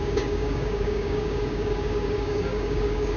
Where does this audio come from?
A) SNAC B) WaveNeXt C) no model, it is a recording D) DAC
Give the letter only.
D